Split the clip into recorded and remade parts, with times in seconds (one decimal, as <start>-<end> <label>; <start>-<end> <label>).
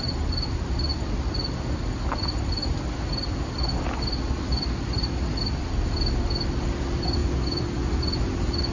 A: 0.0-8.7 recorded